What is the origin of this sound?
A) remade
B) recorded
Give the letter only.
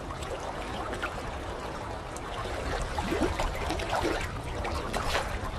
A